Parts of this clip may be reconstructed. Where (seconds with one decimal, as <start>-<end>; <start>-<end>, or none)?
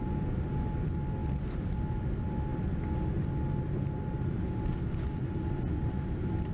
none